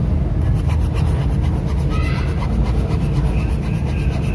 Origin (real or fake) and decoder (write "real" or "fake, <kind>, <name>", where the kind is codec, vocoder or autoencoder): real